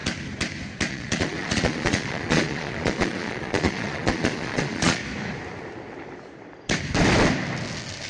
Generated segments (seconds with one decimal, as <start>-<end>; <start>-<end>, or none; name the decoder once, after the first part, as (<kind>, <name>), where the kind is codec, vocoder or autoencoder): 0.9-5.0 (vocoder, Vocos)